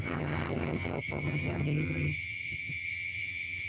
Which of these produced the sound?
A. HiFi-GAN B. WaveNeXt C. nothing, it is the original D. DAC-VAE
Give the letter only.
A